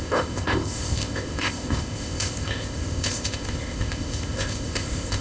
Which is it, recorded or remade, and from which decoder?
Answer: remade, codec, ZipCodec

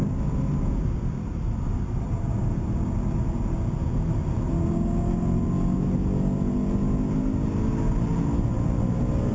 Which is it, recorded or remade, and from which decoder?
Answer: recorded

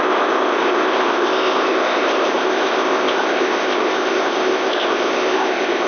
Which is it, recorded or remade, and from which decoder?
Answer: remade, codec, ZipCodec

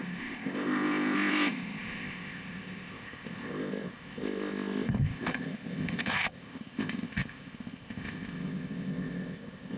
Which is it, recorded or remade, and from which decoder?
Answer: remade, codec, ZipCodec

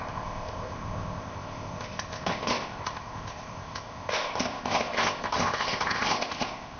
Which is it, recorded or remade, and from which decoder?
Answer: remade, codec, ZipCodec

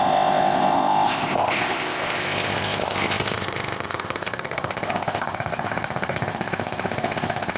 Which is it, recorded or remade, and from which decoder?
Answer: remade, codec, ZipCodec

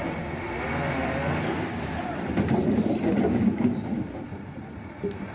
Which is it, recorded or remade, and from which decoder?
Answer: recorded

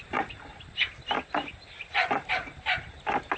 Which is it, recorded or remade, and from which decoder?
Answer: recorded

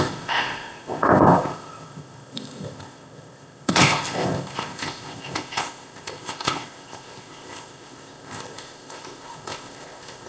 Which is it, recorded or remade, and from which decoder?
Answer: remade, codec, ZipCodec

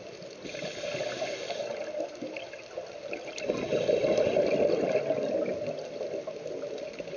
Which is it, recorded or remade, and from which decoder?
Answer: recorded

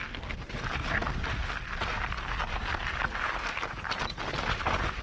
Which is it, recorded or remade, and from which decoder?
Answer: recorded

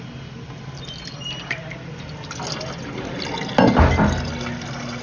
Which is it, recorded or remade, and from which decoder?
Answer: recorded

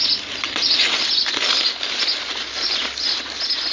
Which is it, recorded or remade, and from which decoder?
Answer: recorded